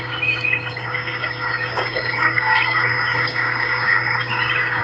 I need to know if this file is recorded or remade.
remade